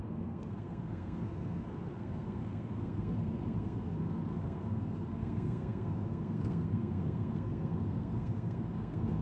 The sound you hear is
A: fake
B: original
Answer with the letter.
A